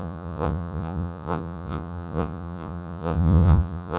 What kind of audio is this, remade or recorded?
remade